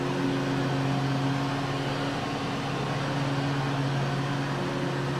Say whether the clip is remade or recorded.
recorded